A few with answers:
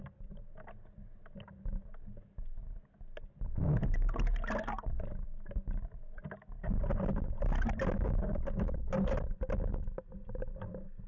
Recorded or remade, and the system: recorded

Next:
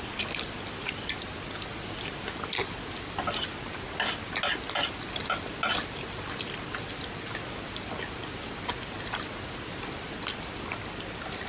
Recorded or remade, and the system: recorded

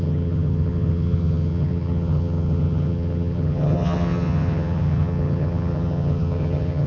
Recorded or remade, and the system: remade, vocoder, HiFi-GAN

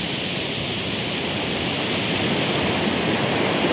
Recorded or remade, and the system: recorded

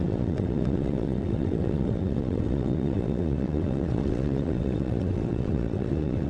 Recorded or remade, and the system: remade, vocoder, WaveNeXt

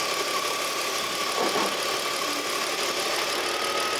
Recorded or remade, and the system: recorded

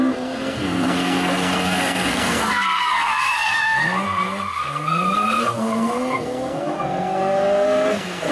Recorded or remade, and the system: remade, codec, SNAC